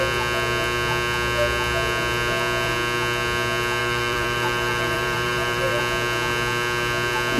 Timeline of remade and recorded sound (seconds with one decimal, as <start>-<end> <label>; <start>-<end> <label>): 0.0-3.8 recorded; 3.8-5.8 remade; 5.8-7.4 recorded